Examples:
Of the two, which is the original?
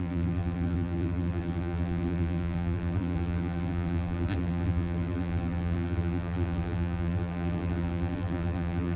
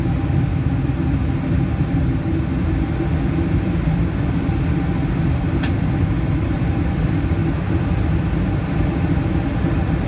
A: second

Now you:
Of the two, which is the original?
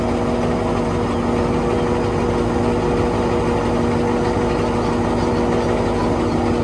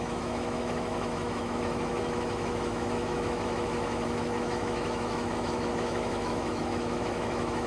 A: first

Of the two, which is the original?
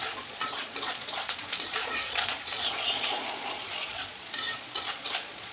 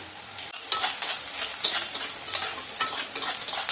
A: second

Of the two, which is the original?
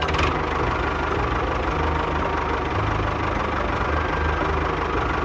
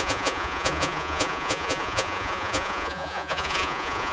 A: first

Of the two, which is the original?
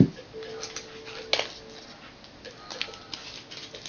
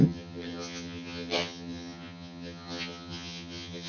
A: first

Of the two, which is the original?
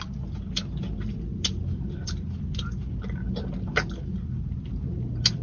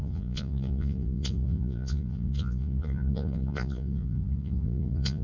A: first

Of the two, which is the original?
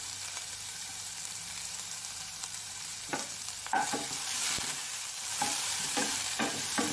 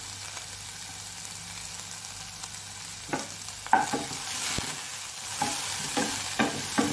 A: second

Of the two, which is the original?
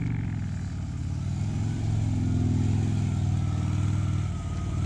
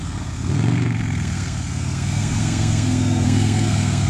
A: first